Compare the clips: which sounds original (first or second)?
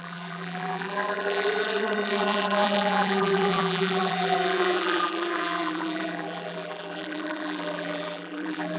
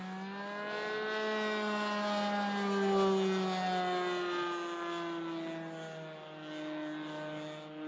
second